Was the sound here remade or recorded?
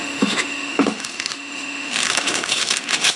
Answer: remade